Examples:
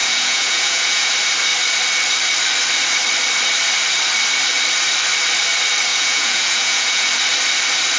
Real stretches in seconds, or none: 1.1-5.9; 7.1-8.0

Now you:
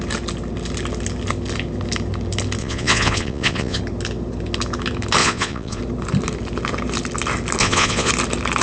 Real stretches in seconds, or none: 0.0-2.6; 3.8-5.2; 5.8-7.6; 8.1-8.6

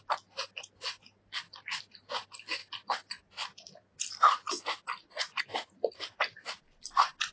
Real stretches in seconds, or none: 0.0-7.3

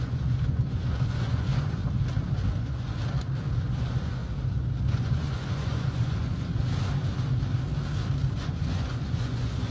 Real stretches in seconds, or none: 1.8-2.6; 3.0-3.6; 4.2-4.9; 6.6-8.4

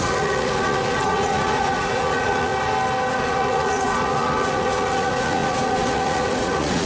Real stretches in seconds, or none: 2.5-3.1

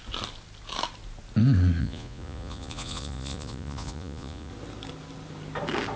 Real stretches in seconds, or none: 0.0-1.8; 4.5-6.0